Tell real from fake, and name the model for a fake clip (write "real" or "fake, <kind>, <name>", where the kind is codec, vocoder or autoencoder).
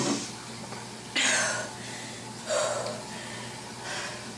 real